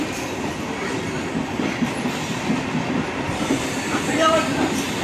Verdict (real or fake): real